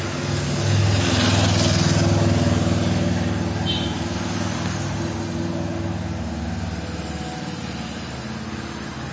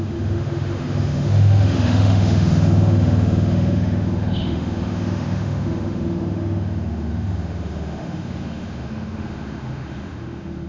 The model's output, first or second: second